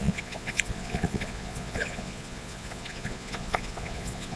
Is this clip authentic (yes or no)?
no